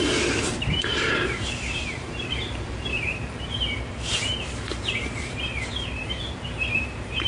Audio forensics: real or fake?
fake